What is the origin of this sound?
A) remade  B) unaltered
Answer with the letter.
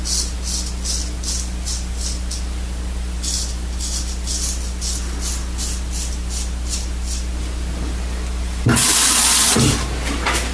B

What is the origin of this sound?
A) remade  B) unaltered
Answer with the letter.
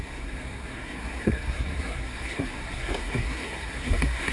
A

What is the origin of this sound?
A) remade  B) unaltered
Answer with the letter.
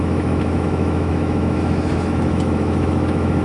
A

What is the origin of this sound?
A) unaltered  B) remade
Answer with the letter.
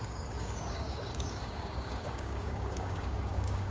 B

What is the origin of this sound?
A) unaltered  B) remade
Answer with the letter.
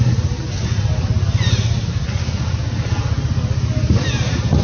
A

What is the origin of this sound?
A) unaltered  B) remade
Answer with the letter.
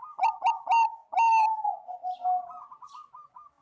A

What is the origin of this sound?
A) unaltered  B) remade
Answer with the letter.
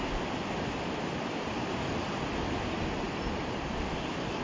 A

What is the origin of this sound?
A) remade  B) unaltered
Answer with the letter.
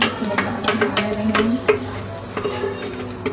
B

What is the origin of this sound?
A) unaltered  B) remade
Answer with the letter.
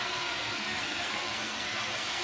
B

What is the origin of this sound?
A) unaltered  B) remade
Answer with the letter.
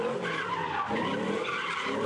A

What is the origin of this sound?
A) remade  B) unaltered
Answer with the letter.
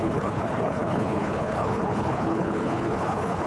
A